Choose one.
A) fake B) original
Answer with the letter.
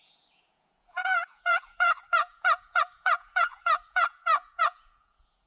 A